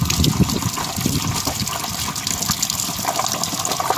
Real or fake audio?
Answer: real